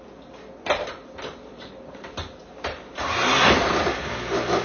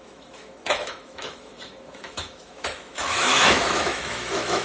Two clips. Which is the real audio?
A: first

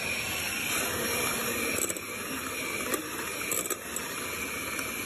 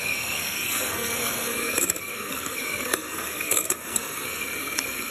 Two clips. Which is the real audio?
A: first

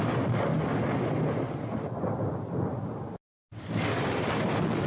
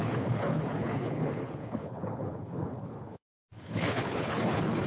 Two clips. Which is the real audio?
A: first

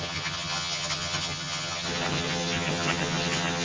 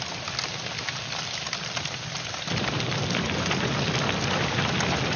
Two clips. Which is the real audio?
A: second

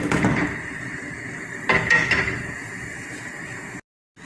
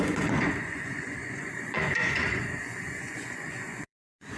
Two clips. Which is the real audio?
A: first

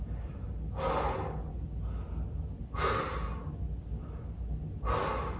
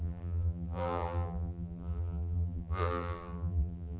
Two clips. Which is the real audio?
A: first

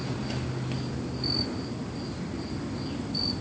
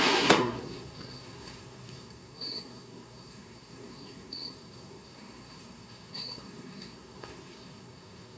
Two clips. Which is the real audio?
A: first